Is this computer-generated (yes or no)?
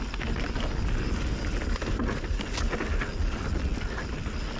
no